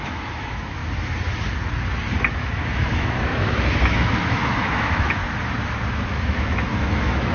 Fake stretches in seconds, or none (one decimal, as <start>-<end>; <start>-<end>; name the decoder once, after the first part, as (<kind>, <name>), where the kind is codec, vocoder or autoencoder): 0.0-0.8 (autoencoder, DAC-VAE); 2.3-5.2; 5.9-7.3